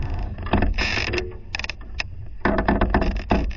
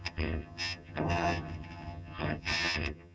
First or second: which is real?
first